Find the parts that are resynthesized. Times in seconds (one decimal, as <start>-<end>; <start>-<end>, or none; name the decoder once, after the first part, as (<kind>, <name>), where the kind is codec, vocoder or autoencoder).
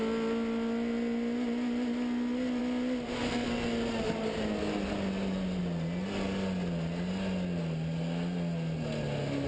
none